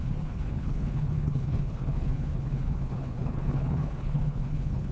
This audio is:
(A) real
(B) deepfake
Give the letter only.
B